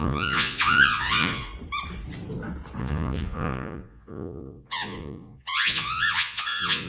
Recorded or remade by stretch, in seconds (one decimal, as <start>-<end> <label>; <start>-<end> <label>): 0.0-1.5 remade; 1.5-2.8 recorded; 2.8-6.9 remade